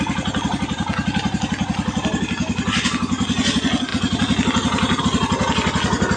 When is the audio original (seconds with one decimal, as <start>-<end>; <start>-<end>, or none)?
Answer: 0.0-6.2